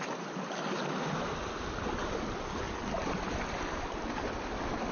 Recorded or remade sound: recorded